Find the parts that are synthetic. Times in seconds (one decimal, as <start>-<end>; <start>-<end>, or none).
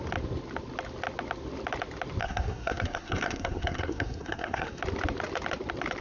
2.2-4.8